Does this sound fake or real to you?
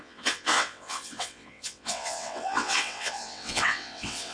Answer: fake